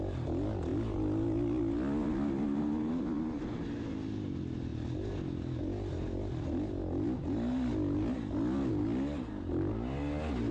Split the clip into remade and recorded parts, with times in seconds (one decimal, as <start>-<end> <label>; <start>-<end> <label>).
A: 0.0-10.5 recorded